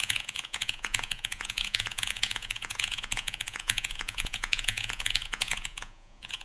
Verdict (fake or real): fake